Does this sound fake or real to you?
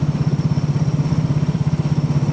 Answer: real